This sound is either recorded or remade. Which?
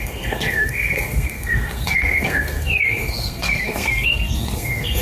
remade